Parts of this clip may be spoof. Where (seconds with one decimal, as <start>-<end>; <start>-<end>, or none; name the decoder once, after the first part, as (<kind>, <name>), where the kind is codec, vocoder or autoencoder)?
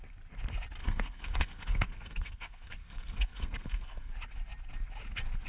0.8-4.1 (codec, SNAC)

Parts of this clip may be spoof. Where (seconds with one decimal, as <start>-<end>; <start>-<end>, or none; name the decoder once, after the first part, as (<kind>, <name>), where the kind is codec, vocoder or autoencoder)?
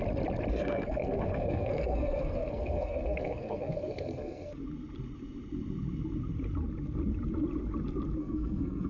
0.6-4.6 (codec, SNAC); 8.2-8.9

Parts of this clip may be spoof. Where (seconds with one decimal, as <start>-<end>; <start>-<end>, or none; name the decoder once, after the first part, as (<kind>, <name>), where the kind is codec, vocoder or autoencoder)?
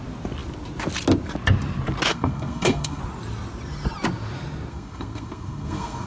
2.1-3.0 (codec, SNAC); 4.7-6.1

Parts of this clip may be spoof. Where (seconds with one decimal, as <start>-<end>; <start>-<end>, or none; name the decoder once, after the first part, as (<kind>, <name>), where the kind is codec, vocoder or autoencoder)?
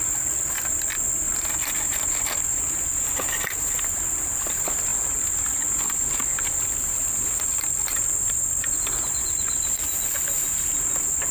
none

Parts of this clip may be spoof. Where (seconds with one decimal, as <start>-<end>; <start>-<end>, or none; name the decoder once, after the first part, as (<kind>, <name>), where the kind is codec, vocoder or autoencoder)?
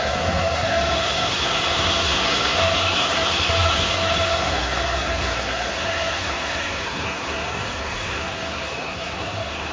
0.0-9.7 (codec, SNAC)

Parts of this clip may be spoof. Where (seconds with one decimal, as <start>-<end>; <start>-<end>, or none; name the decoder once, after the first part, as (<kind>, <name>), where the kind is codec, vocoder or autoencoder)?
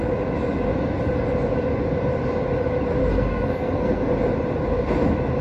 3.0-4.1 (codec, SNAC)